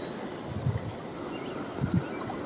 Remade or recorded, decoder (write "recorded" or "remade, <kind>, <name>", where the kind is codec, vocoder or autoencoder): recorded